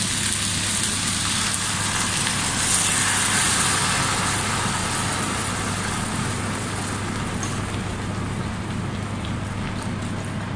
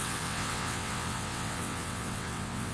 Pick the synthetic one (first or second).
second